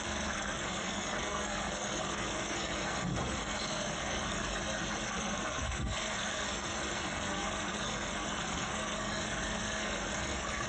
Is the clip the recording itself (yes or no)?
no